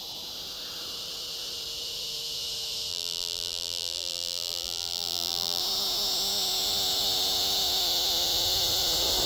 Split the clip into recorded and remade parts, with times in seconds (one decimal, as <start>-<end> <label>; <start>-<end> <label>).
0.0-2.9 recorded; 2.9-5.6 remade; 5.6-9.3 recorded